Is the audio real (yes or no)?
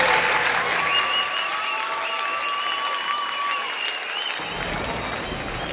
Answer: yes